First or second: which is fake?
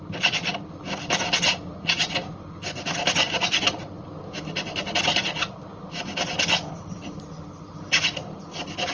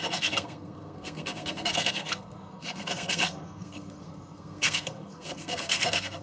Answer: second